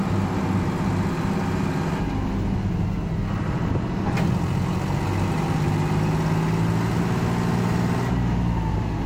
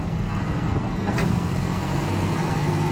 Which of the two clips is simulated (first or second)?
second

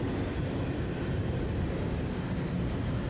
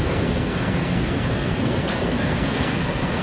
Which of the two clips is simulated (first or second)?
second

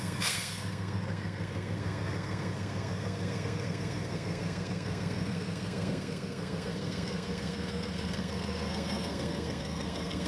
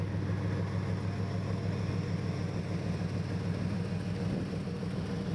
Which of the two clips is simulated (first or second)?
first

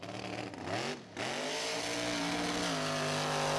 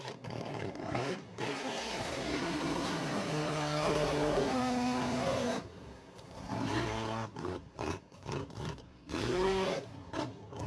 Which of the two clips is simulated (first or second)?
second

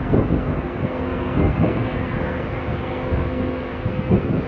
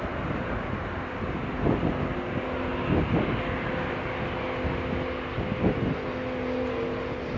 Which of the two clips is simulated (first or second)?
first